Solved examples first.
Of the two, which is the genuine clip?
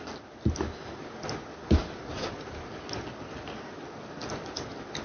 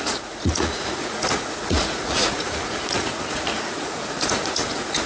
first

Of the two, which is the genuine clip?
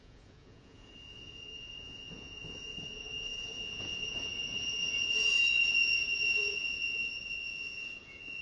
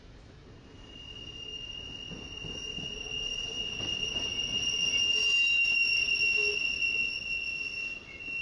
second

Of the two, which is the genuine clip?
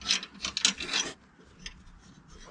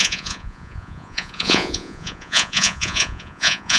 first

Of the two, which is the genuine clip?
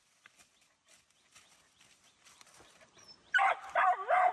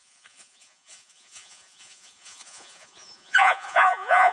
first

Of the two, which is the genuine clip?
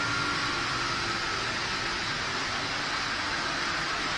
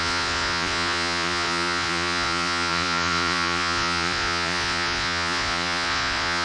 first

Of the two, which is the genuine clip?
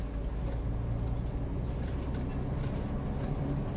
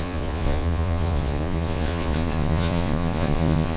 first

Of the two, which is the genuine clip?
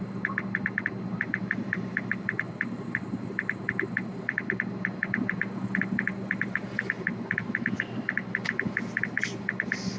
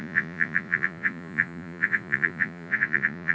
first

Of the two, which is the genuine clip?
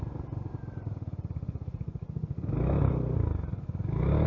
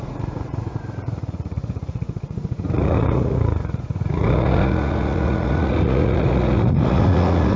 first